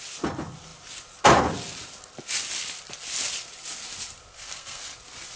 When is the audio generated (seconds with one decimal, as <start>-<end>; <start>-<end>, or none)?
4.3-4.8